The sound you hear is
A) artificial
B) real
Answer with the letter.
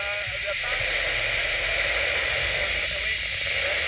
B